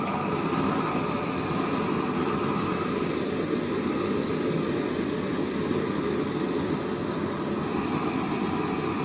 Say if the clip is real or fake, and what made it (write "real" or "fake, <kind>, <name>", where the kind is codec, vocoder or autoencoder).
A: real